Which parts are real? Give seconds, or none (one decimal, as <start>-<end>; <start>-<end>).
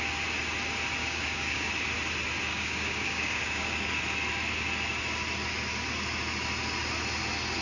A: 0.0-1.0; 1.7-2.5; 3.9-7.6